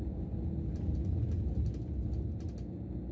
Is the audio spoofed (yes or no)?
no